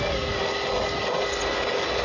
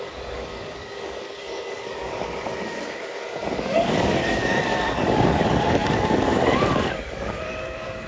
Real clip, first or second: first